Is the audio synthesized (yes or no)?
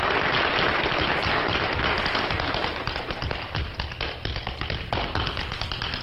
no